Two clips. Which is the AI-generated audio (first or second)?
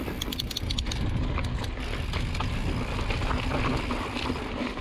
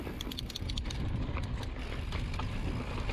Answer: second